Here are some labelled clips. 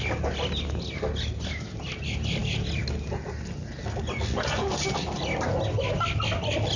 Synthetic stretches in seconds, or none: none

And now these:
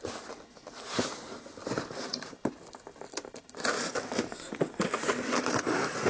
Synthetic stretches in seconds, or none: 4.3-4.8 (vocoder, Vocos)